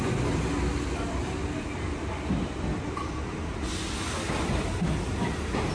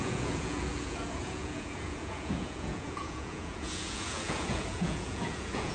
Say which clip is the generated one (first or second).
second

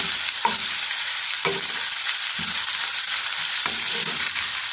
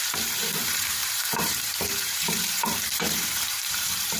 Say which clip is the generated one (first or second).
second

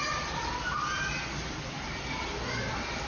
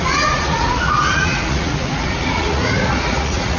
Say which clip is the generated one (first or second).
second